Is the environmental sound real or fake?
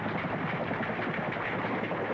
real